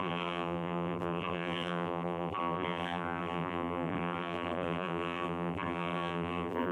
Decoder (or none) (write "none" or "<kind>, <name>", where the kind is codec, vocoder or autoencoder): vocoder, BigVGAN v2